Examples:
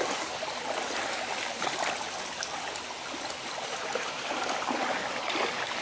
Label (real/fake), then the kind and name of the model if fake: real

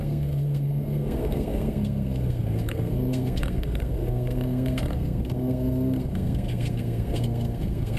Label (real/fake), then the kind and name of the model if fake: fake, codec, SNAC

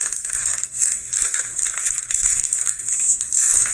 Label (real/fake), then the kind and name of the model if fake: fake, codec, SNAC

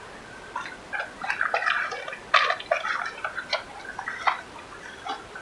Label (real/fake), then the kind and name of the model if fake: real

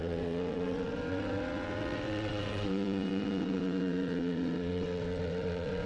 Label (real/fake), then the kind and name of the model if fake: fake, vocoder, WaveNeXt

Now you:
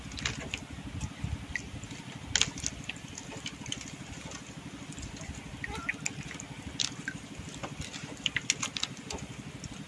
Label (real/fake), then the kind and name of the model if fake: real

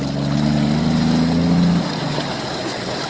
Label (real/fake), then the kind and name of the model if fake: real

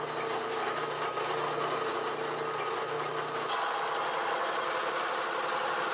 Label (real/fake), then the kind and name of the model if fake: real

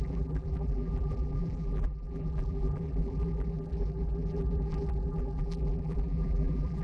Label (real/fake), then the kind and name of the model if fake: fake, vocoder, BigVGAN v2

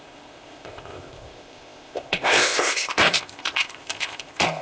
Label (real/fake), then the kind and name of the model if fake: fake, codec, ZipCodec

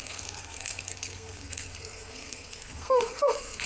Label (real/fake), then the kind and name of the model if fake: fake, codec, SNAC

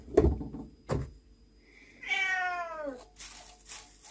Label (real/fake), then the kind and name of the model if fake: real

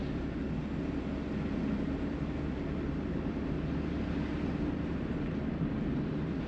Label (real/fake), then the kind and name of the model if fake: real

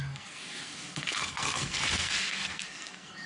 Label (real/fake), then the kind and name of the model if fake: fake, codec, SNAC